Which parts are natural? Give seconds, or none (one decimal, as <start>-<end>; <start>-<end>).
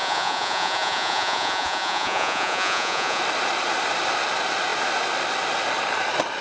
3.2-6.4